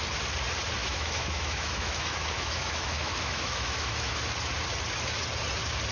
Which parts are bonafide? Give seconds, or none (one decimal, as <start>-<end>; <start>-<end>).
0.0-0.8; 4.2-5.9